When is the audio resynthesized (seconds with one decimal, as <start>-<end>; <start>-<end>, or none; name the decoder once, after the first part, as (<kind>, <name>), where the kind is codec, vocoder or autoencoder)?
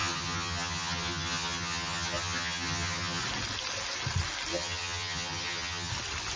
0.0-3.2 (vocoder, HiFi-GAN); 4.5-5.9